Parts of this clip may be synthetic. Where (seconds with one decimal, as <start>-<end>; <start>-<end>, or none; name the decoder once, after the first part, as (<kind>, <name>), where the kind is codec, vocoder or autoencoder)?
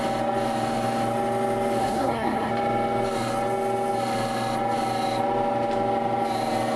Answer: 1.8-2.5 (codec, SNAC)